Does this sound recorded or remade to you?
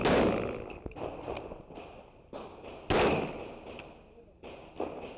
recorded